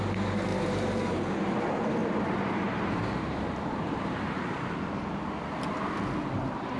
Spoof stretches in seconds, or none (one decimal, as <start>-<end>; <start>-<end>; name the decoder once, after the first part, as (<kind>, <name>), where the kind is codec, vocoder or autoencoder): 0.5-1.2 (vocoder, BigVGAN v2); 2.0-4.7